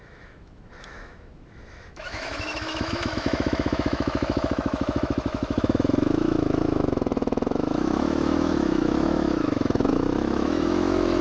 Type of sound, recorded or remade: remade